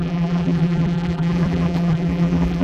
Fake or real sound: fake